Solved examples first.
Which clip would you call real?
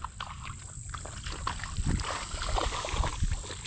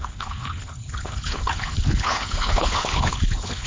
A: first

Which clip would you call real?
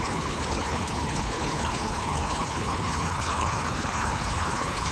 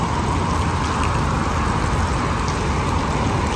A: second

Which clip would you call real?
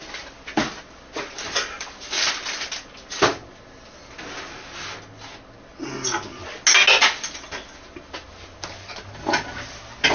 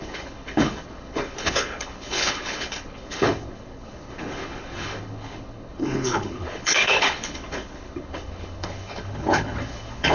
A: first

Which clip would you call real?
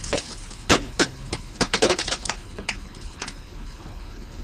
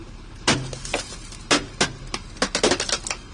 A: second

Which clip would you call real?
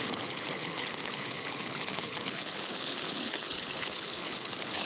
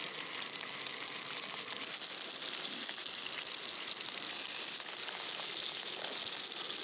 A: second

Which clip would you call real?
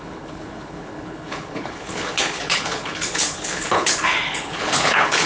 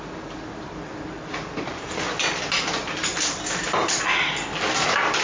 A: second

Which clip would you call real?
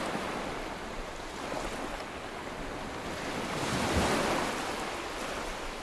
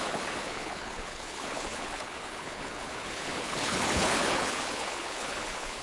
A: first